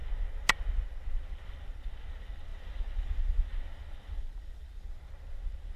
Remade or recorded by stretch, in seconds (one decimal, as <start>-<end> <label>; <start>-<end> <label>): 0.0-5.8 recorded